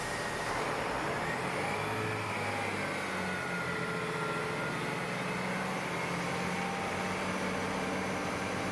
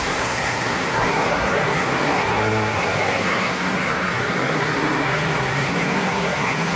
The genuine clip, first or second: first